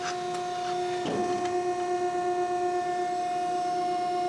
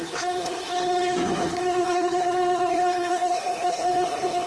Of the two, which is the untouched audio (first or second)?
first